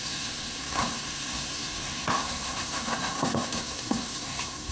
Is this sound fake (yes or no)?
yes